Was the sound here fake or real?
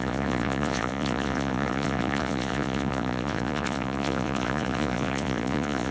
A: fake